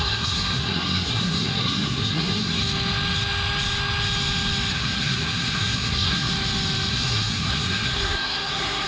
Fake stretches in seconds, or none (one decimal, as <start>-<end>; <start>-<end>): 0.0-2.6; 4.7-6.3; 6.9-8.9